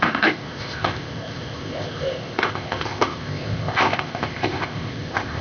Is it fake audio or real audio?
fake